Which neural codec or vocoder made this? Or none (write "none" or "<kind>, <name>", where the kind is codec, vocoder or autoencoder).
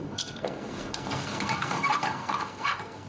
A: codec, SNAC